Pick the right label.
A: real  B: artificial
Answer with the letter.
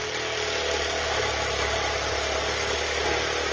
A